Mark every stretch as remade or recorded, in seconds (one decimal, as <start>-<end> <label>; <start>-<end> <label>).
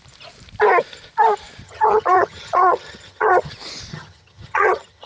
0.0-1.6 recorded; 1.6-3.5 remade; 3.5-3.9 recorded; 3.9-5.1 remade